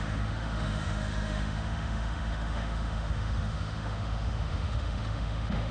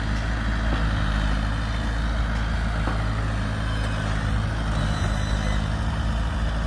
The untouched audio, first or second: second